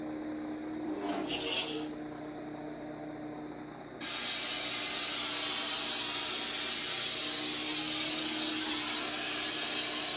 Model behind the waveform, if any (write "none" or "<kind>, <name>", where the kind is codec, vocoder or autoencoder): none